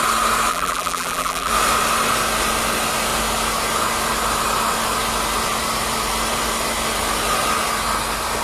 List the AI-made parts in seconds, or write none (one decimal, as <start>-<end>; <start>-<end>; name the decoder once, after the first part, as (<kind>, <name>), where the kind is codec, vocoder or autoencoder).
0.5-1.5 (vocoder, BigVGAN v2)